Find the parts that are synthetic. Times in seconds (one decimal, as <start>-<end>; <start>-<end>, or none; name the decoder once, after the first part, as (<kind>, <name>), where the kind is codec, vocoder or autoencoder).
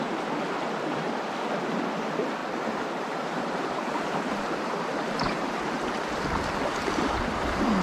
2.4-6.2 (vocoder, BigVGAN v2)